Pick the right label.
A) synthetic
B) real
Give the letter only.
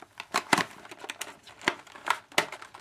B